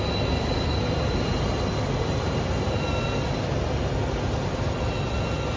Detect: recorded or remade recorded